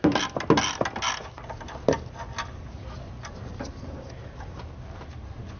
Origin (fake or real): real